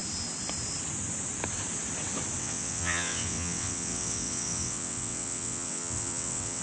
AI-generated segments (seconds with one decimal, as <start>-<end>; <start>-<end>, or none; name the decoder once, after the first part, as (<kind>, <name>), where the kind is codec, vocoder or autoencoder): 2.4-6.6 (vocoder, WaveNeXt)